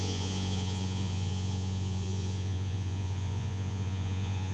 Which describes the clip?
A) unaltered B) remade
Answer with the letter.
B